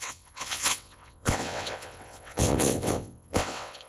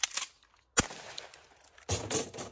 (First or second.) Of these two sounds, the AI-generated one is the first